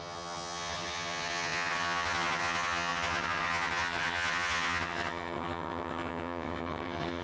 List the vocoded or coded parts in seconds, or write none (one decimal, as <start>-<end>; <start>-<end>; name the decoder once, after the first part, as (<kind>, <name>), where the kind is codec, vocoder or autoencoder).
0.0-7.2 (vocoder, HiFi-GAN)